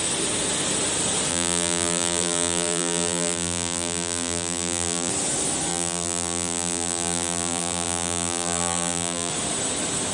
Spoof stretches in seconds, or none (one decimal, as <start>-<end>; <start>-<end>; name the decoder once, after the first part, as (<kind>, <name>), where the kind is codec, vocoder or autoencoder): 1.3-5.1 (vocoder, BigVGAN v2); 5.7-9.3